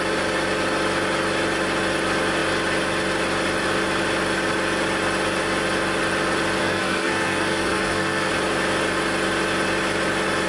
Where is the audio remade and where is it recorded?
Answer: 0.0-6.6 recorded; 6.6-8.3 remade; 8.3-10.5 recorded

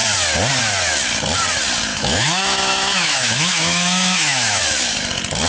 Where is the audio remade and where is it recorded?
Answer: 0.0-1.9 recorded; 1.9-4.6 remade; 4.6-5.5 recorded

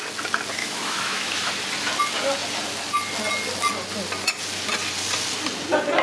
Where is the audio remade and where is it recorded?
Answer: 0.0-0.6 recorded; 0.6-1.5 remade; 1.5-6.0 recorded

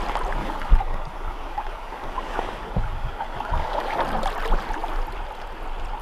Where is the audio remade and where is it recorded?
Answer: 0.0-0.4 recorded; 0.4-4.0 remade; 4.0-6.0 recorded